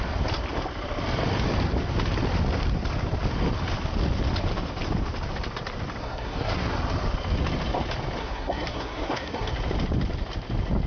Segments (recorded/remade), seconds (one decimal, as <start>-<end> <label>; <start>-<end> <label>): 0.0-6.0 recorded; 6.0-6.7 remade; 6.7-8.2 recorded; 8.2-9.5 remade; 9.5-10.9 recorded